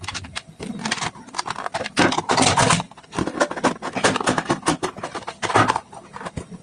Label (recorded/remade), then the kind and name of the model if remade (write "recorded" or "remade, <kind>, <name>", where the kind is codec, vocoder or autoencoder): remade, vocoder, BigVGAN v2